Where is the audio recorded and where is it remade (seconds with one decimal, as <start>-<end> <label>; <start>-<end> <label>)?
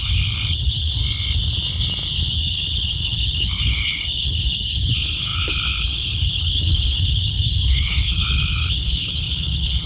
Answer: 0.0-1.0 remade; 1.0-2.3 recorded; 2.3-9.9 remade